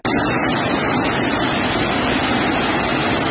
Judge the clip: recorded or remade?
recorded